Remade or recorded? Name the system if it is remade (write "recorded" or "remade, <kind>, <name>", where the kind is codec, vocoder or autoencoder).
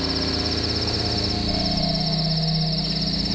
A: recorded